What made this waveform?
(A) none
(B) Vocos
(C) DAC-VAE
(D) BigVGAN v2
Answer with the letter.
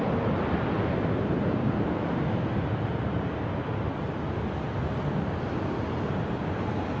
A